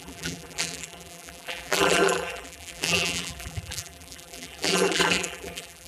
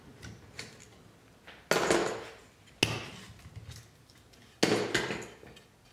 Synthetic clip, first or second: first